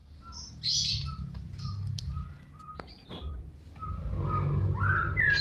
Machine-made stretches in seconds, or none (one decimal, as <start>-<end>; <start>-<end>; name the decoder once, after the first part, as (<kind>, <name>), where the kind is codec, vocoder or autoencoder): none